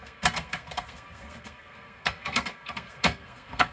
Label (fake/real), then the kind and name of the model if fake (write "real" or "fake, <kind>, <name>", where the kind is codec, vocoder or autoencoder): fake, codec, SNAC